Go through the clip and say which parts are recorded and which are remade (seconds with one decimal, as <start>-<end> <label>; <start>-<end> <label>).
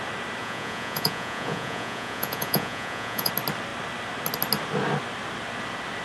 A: 0.0-0.4 recorded; 0.4-3.3 remade; 3.3-6.0 recorded